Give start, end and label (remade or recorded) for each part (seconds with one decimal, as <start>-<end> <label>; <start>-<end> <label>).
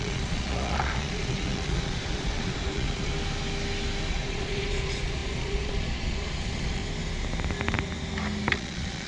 0.0-3.1 remade; 3.1-4.1 recorded; 4.1-6.8 remade; 6.8-8.5 recorded; 8.5-9.1 remade